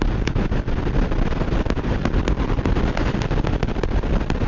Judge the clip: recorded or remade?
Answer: recorded